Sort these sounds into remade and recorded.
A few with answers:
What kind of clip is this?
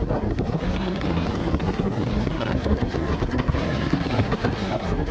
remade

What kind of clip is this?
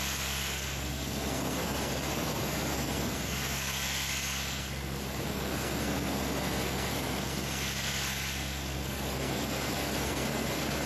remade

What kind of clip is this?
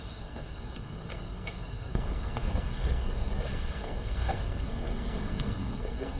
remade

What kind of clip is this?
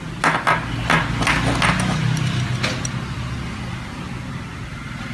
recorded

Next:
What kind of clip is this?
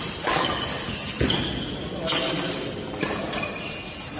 recorded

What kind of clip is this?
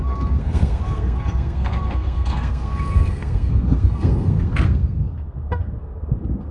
remade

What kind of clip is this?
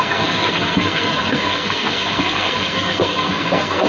remade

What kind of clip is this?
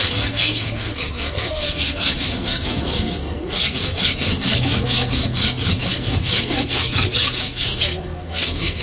remade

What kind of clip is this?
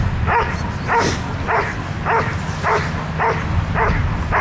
recorded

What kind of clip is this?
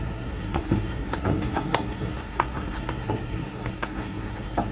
remade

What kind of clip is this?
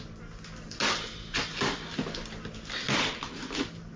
recorded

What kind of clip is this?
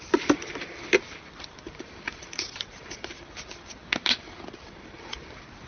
recorded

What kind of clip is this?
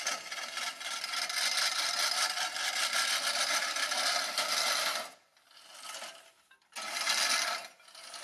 recorded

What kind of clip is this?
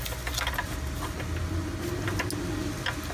recorded